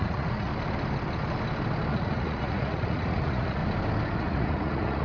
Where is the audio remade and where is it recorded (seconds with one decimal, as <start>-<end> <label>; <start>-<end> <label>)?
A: 0.0-0.5 remade; 0.5-1.9 recorded; 1.9-3.6 remade; 3.6-4.2 recorded; 4.2-5.0 remade